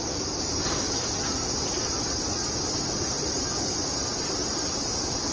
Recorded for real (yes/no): yes